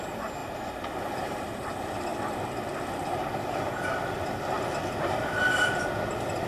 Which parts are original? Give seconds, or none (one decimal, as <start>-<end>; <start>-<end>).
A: 0.0-0.4; 1.6-6.5